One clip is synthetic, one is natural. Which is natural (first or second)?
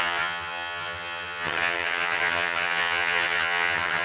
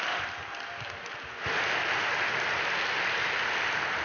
second